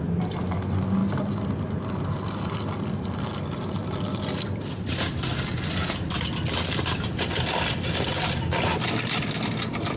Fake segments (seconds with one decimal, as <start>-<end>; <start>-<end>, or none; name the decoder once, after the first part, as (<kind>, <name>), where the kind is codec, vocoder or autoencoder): none